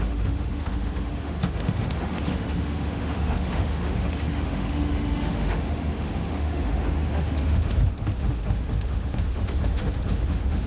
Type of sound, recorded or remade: remade